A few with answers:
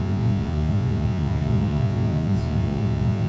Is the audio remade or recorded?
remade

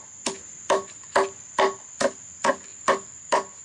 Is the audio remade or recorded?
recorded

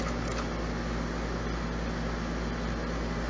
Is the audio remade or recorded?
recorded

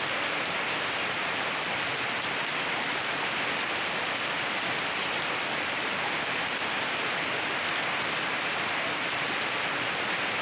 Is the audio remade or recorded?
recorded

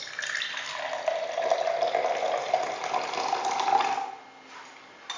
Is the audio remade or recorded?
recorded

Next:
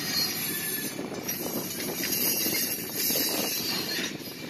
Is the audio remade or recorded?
remade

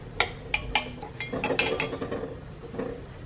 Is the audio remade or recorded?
recorded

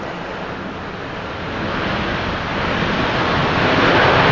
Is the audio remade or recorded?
recorded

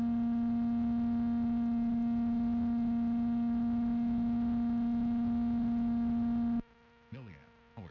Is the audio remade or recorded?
recorded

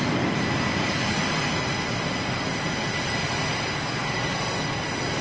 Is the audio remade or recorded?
recorded